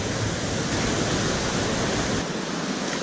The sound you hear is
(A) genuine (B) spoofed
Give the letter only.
A